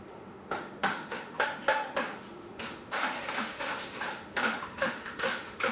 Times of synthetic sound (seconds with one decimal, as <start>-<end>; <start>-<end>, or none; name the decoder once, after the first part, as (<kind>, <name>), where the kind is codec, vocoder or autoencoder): 0.0-5.7 (autoencoder, DAC-VAE)